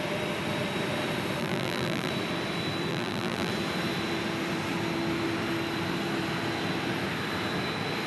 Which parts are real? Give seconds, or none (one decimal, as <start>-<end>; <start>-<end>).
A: 0.0-1.4; 2.1-2.9; 3.5-8.1